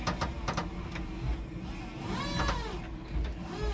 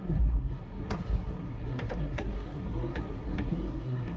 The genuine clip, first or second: first